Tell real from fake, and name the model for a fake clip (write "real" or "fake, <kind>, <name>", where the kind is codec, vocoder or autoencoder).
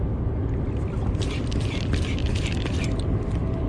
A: real